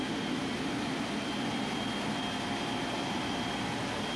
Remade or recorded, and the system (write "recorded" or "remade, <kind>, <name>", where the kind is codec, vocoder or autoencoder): recorded